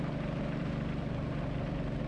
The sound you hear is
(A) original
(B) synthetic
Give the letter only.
A